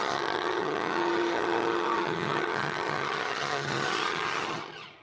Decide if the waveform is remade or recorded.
remade